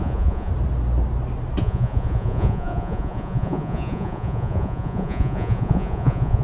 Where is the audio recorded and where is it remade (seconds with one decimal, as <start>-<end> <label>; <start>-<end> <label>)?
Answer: 0.0-0.5 remade; 0.5-1.6 recorded; 1.6-6.4 remade